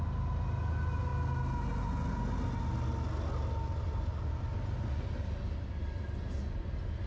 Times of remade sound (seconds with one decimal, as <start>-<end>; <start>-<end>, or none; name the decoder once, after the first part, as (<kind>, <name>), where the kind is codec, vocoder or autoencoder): none